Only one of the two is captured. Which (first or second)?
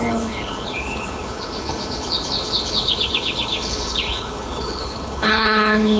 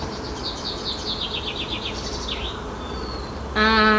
second